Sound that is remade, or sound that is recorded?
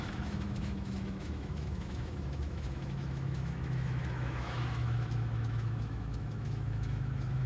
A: remade